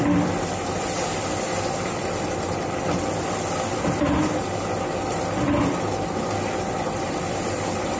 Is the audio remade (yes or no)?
no